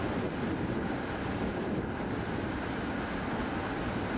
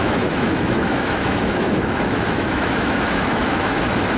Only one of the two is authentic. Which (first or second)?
first